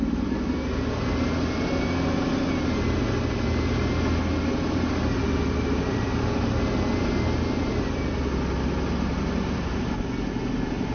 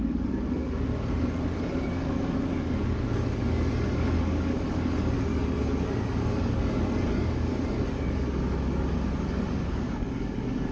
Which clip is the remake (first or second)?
second